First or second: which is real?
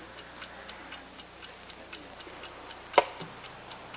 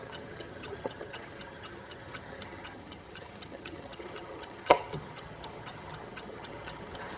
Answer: first